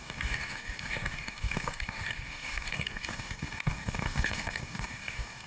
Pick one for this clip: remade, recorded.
remade